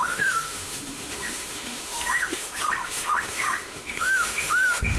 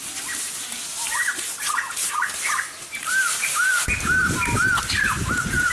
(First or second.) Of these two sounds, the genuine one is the second